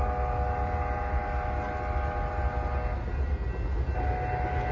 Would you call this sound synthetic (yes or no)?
no